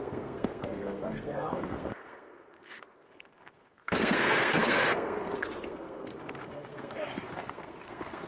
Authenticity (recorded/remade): remade